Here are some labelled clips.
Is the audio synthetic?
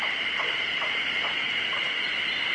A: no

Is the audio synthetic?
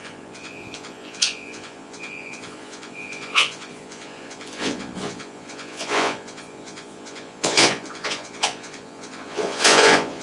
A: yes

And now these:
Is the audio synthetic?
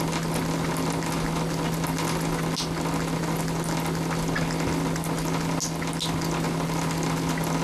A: no